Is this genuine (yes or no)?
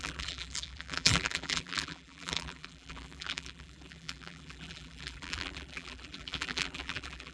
no